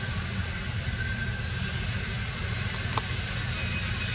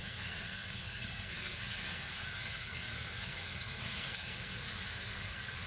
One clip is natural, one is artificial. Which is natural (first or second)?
first